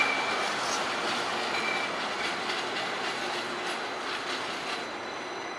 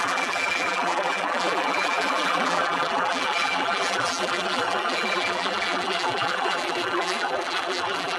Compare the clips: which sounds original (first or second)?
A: first